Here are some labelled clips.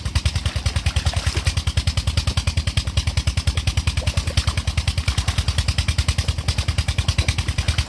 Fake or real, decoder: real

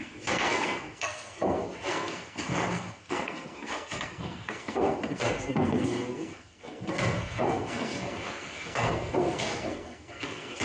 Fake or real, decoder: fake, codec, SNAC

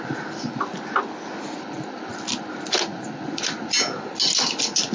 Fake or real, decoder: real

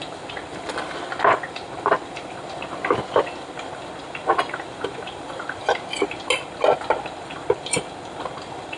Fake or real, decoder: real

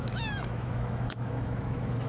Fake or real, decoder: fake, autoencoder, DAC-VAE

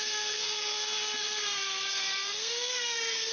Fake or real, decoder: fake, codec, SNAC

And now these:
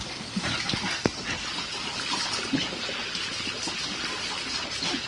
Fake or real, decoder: real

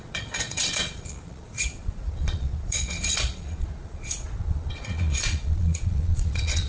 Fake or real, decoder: fake, vocoder, Vocos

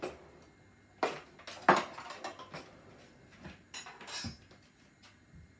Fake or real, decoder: real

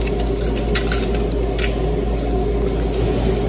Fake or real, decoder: real